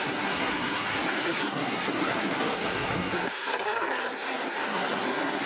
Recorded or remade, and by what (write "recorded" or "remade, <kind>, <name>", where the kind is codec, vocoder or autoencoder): remade, codec, SNAC